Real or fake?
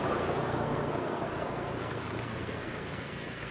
fake